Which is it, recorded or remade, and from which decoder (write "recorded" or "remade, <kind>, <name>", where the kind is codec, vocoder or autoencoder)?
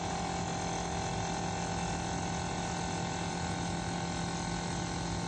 recorded